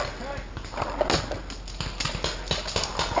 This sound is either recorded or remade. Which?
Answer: recorded